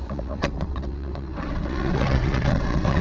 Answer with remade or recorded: remade